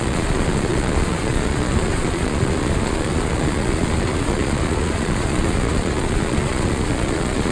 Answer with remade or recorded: remade